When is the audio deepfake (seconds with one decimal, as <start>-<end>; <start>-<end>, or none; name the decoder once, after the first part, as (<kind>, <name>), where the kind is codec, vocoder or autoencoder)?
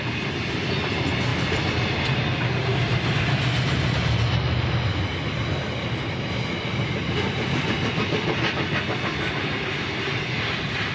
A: none